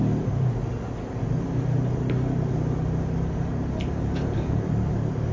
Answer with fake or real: real